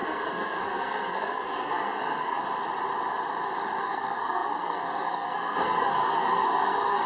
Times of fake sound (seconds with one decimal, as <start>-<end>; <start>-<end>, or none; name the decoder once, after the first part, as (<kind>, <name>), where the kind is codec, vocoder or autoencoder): 0.0-2.4 (codec, SNAC); 3.8-7.1